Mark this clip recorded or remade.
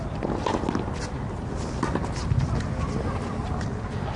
recorded